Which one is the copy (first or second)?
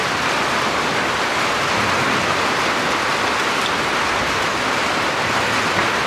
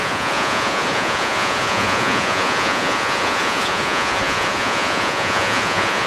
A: second